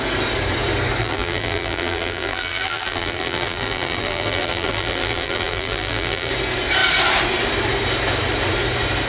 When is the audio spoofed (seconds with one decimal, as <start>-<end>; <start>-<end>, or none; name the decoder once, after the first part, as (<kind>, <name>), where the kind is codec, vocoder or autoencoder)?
1.0-6.3 (vocoder, BigVGAN v2)